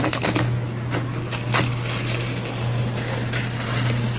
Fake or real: real